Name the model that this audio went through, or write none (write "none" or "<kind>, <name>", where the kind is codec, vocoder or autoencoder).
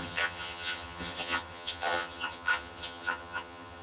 vocoder, HiFi-GAN